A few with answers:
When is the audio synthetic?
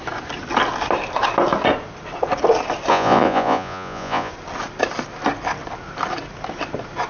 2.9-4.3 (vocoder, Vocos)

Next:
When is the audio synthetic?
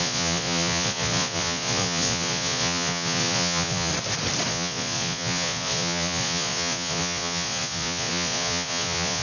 0.0-3.9 (vocoder, Vocos); 4.5-9.2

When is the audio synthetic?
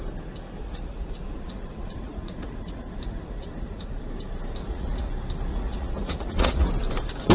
0.6-4.0 (vocoder, Vocos); 4.6-5.1; 5.5-6.7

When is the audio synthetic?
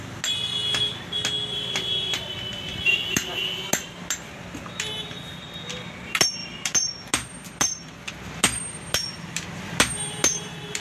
none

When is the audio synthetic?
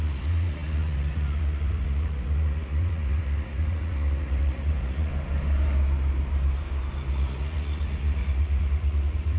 0.0-5.1 (vocoder, Vocos); 7.1-9.4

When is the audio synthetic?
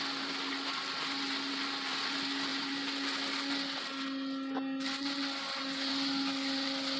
none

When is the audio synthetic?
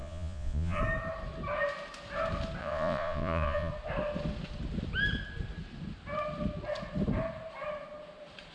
0.0-0.8 (vocoder, Vocos); 2.6-3.7